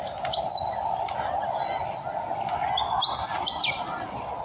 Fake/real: real